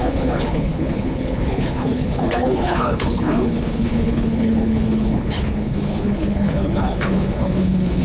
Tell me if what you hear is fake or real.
fake